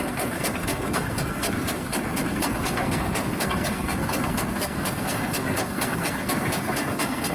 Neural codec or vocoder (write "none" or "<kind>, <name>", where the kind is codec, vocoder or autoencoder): codec, SNAC